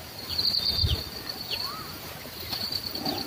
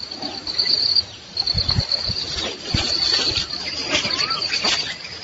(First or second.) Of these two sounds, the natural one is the first